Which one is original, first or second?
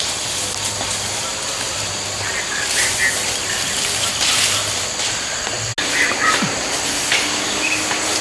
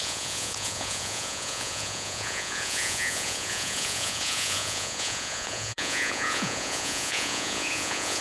first